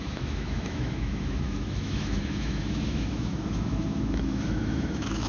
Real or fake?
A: fake